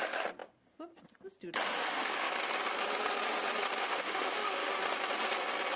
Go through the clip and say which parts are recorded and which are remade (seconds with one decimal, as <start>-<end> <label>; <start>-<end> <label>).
0.0-1.7 recorded; 1.7-2.3 remade; 2.3-3.8 recorded; 3.8-4.7 remade; 4.7-5.8 recorded